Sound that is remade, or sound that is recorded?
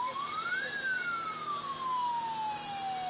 recorded